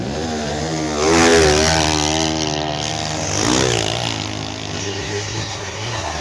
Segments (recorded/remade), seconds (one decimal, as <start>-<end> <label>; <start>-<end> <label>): 0.0-4.8 recorded; 4.8-6.2 remade